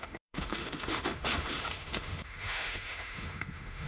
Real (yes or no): no